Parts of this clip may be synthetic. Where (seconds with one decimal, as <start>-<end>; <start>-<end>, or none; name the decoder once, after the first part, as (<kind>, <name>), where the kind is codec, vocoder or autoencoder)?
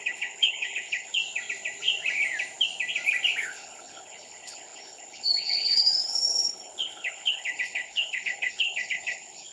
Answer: 0.0-1.2 (codec, HILCodec); 3.4-9.5